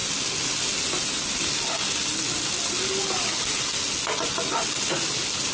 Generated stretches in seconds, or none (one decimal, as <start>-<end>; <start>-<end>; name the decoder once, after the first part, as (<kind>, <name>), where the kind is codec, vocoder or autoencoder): none